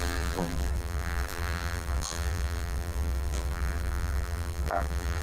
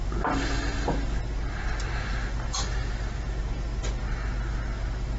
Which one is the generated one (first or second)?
first